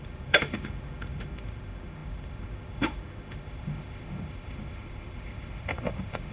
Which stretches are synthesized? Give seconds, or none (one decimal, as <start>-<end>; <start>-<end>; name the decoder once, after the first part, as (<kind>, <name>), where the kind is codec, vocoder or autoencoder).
0.0-6.3 (autoencoder, DAC-VAE)